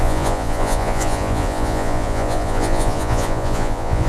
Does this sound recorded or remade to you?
remade